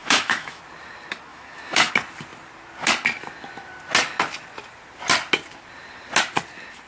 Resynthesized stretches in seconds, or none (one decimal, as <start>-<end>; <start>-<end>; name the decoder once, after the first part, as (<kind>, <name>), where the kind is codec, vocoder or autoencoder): 0.0-0.6 (autoencoder, DAC-VAE); 1.3-1.9